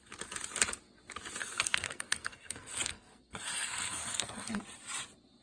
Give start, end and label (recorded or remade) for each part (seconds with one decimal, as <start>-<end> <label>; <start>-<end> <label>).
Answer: 0.0-1.4 recorded; 1.4-4.6 remade; 4.6-5.4 recorded